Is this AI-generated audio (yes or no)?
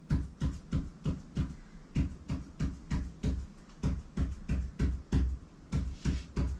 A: no